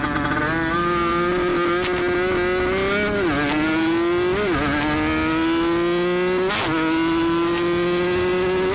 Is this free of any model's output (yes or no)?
yes